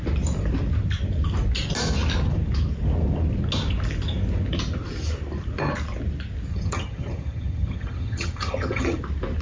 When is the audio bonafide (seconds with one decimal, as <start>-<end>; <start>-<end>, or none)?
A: 0.0-6.5; 9.0-9.4

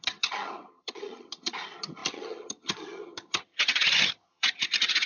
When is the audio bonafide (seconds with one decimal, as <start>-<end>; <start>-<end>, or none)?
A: none

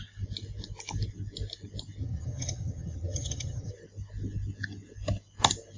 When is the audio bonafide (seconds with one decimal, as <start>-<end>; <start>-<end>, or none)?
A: 0.0-2.0; 3.7-5.8

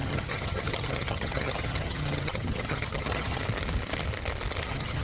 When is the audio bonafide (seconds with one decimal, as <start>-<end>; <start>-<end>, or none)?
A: 3.4-4.6

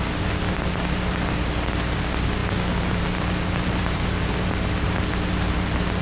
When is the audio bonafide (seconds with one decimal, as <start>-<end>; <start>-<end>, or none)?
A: 0.0-6.0

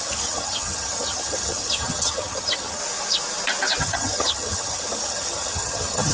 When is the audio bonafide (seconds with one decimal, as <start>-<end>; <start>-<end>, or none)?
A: 2.8-3.8

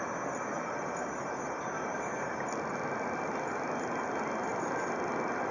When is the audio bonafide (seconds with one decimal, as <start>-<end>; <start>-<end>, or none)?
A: 0.0-5.5